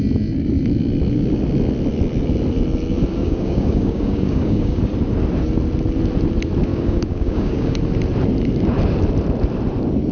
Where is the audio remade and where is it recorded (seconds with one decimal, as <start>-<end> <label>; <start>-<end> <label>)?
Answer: 0.0-3.2 recorded; 3.2-4.8 remade; 4.8-6.7 recorded; 6.7-7.8 remade; 7.8-10.1 recorded